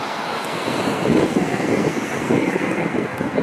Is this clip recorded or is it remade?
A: remade